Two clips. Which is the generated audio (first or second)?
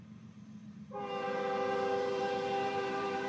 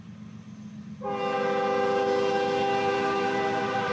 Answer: first